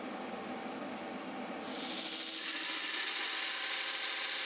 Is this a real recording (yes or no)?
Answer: yes